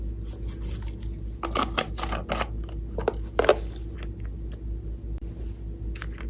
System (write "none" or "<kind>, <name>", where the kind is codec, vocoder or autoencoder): none